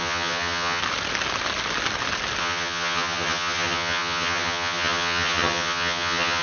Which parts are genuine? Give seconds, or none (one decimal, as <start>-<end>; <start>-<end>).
0.8-2.4